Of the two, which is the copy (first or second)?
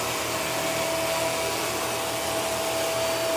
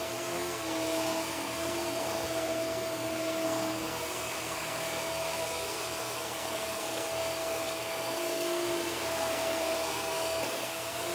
second